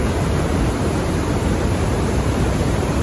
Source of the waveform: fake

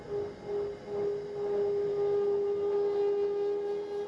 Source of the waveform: real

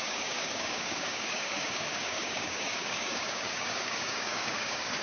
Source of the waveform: fake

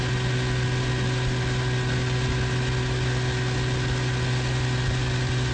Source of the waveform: real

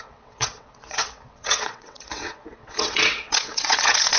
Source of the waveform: fake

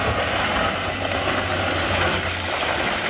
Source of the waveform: real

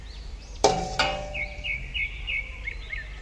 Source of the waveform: fake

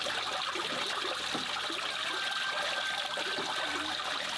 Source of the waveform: real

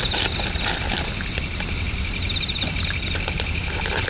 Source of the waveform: real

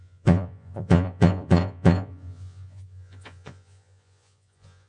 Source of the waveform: fake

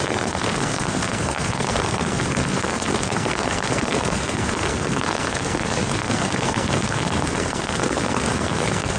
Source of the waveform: fake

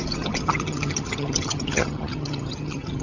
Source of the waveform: fake